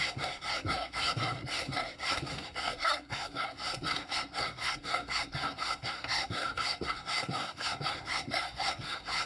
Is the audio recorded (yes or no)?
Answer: no